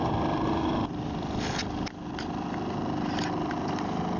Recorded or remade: recorded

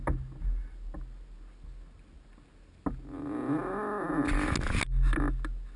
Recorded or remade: recorded